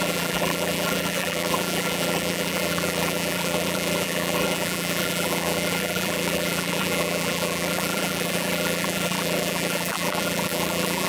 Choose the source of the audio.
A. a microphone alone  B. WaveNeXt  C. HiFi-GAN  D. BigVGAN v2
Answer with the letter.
D